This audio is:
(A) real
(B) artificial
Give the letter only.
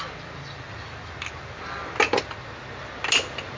A